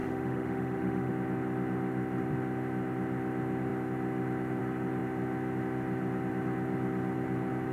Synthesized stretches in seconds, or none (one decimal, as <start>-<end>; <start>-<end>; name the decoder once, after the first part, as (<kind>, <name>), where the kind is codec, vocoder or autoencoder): 0.0-1.1 (autoencoder, DAC-VAE)